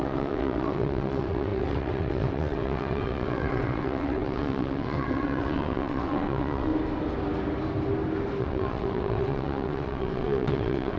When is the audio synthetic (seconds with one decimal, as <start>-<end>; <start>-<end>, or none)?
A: 0.0-6.7; 8.4-11.0